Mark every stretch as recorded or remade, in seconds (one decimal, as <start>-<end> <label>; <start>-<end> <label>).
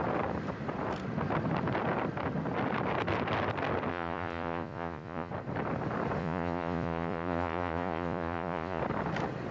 0.0-3.9 recorded; 3.9-5.3 remade; 5.3-6.2 recorded; 6.2-8.8 remade; 8.8-9.5 recorded